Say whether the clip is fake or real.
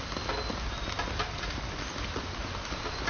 real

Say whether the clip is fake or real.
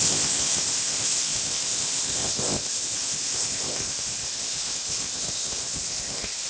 fake